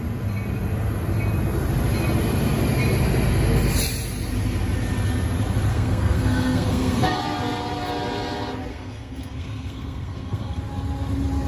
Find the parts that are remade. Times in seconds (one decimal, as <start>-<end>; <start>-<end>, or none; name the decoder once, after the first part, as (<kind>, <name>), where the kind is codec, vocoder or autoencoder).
5.7-7.2 (codec, SNAC); 8.7-10.6